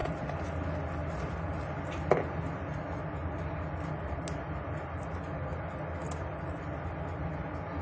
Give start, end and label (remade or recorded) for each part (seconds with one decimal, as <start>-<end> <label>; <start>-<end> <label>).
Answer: 0.0-7.8 recorded